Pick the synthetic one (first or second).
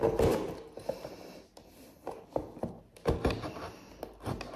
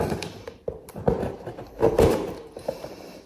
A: second